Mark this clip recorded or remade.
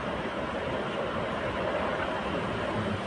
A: recorded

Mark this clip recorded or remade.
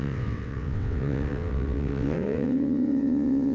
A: remade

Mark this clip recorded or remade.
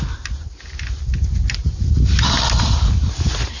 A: recorded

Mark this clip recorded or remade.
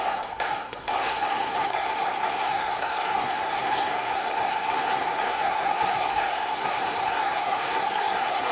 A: remade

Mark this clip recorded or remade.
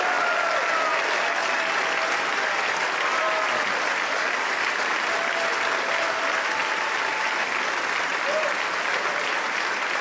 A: recorded